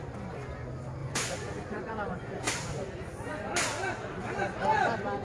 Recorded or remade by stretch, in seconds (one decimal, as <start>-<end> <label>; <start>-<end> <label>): 0.0-1.0 recorded; 1.0-2.5 remade; 2.5-5.2 recorded